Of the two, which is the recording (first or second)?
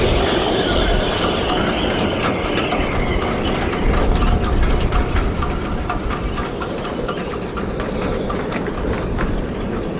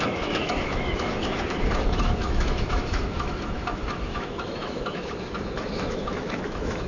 first